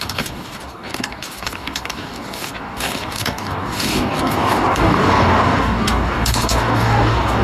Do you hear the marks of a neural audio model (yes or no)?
yes